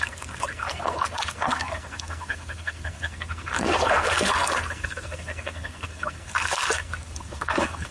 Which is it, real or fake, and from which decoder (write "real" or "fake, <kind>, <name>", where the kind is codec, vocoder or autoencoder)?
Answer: fake, codec, SNAC